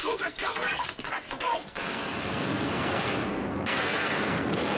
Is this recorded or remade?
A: remade